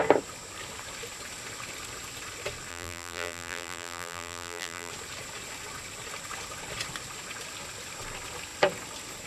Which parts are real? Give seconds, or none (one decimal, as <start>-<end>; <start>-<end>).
0.0-2.7; 4.9-9.3